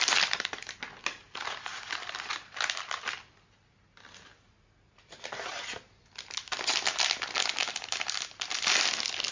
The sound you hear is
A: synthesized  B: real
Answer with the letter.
B